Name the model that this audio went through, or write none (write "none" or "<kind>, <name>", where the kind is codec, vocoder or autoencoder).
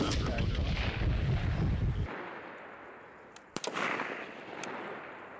none